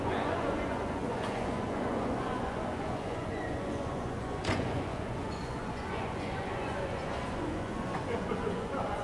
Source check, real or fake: fake